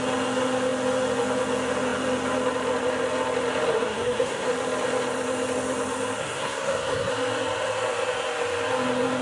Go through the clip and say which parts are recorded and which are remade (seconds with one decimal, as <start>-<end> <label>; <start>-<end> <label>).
0.0-3.7 recorded; 3.7-4.5 remade; 4.5-6.2 recorded; 6.2-7.1 remade; 7.1-9.2 recorded